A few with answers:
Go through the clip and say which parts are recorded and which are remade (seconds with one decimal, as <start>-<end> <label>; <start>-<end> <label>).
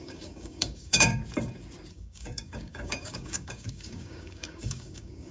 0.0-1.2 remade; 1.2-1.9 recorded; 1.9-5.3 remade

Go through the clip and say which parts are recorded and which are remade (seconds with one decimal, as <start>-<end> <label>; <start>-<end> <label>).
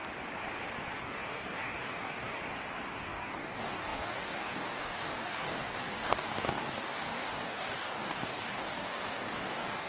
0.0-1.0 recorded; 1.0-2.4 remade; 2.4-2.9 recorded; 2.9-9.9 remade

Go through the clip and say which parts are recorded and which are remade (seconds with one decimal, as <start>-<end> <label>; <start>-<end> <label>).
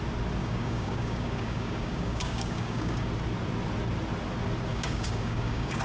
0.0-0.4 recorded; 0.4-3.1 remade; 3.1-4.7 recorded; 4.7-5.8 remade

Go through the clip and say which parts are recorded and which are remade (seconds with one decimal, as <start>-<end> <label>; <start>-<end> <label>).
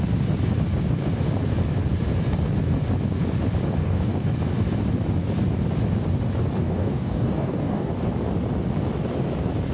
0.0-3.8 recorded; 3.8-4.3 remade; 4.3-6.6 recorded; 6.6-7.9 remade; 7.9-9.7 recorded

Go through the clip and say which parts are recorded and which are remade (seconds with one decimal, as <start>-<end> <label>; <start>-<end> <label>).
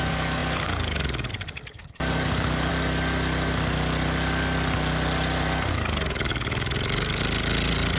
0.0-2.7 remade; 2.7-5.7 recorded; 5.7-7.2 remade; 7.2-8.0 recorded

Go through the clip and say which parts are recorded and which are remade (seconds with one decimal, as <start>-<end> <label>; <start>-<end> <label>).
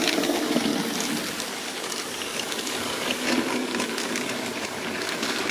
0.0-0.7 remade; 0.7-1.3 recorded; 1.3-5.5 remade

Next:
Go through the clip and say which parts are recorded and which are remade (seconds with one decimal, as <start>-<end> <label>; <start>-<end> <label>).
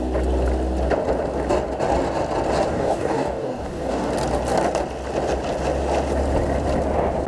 0.0-2.7 recorded; 2.7-4.1 remade; 4.1-7.3 recorded